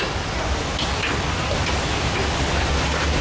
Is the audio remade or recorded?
recorded